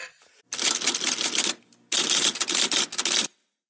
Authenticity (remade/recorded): recorded